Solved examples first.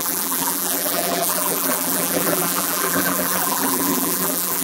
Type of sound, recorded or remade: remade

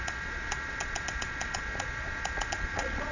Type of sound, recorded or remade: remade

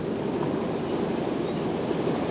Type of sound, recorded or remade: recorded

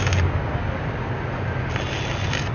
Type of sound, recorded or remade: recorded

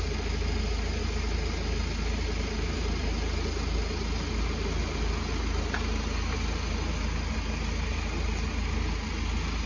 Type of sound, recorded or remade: recorded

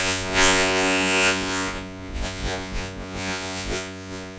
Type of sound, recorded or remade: remade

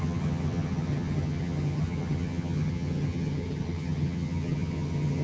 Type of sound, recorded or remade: remade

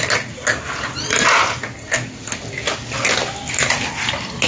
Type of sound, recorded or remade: recorded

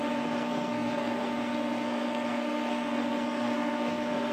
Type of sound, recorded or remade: remade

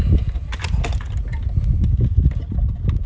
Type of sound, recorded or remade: recorded